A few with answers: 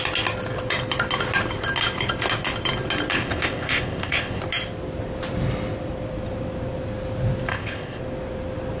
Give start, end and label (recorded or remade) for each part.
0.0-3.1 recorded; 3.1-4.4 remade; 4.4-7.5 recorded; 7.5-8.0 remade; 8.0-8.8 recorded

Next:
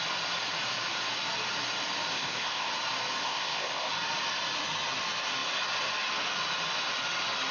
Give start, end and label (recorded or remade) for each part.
0.0-2.1 recorded; 2.1-2.7 remade; 2.7-3.2 recorded; 3.2-3.9 remade; 3.9-7.5 recorded

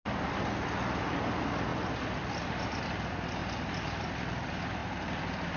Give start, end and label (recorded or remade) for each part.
0.0-5.6 recorded

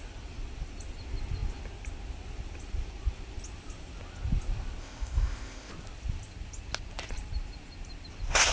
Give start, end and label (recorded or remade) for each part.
0.0-4.8 recorded; 4.8-5.7 remade; 5.7-8.5 recorded

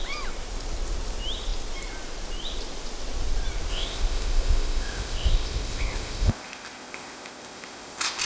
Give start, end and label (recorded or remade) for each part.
0.0-3.7 recorded; 3.7-8.2 remade

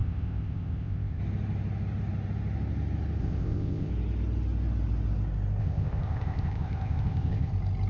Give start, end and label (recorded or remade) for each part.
0.0-1.2 remade; 1.2-3.2 recorded; 3.2-3.9 remade; 3.9-5.6 recorded; 5.6-7.5 remade; 7.5-7.9 recorded